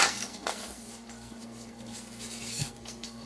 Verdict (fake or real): fake